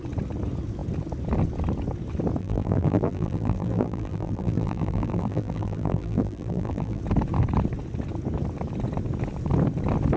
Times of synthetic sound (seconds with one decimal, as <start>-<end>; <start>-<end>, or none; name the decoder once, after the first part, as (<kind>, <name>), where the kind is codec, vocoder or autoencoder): 2.4-7.0 (vocoder, BigVGAN v2)